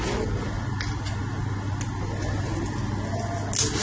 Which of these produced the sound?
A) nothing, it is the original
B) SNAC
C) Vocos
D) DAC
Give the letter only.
A